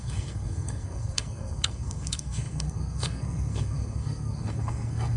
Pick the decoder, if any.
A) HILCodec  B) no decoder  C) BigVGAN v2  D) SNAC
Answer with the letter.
D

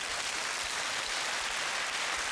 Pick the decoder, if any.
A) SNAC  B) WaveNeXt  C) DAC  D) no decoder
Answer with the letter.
D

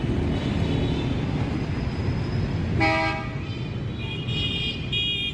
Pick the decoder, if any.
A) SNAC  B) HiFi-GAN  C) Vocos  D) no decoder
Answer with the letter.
D